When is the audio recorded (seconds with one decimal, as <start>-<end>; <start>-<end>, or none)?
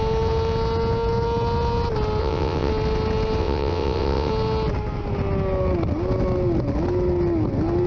0.0-2.2; 2.7-3.4; 4.3-7.9